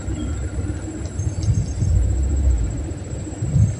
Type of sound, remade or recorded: recorded